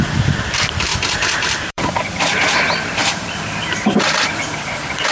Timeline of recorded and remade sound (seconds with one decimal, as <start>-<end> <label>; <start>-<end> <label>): 0.0-0.9 recorded; 0.9-1.9 remade; 1.9-3.0 recorded; 3.0-3.6 remade; 3.6-5.1 recorded